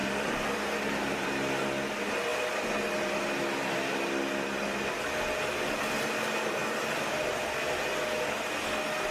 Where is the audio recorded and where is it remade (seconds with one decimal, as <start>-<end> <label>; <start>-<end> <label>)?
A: 0.0-0.8 remade; 0.8-9.1 recorded